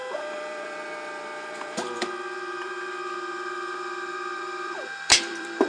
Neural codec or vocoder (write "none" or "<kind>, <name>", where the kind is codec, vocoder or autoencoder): vocoder, BigVGAN v2